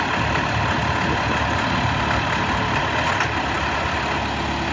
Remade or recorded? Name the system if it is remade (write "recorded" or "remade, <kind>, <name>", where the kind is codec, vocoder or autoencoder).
recorded